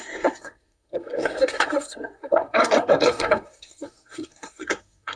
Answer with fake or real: fake